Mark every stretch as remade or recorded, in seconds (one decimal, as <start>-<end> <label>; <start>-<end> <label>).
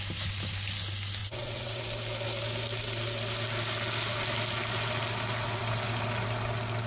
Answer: 0.0-1.2 recorded; 1.2-1.8 remade; 1.8-6.9 recorded